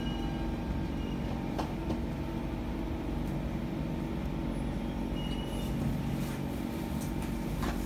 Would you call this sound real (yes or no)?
yes